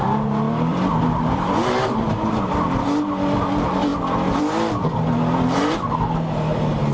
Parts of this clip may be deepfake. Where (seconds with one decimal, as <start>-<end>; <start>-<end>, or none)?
0.7-1.6